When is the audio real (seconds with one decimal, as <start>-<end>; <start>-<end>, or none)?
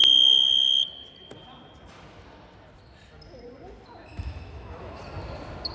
0.0-4.1; 5.0-5.7